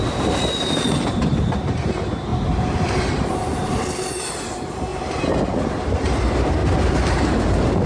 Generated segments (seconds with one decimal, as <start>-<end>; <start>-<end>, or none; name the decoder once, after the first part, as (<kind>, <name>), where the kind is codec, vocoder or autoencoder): 4.9-5.4 (vocoder, BigVGAN v2)